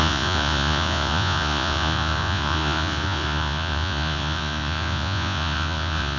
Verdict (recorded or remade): remade